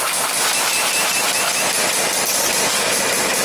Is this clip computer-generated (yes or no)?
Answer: no